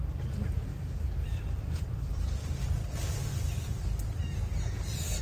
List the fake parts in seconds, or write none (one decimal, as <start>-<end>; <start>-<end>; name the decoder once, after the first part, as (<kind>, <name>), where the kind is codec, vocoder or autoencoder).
0.7-2.6 (vocoder, BigVGAN v2); 3.3-4.4